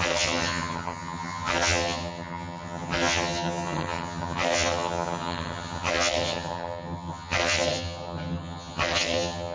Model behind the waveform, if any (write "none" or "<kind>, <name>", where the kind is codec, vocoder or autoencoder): vocoder, HiFi-GAN